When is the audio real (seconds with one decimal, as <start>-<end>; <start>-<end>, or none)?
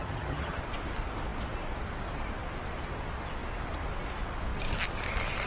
0.6-5.5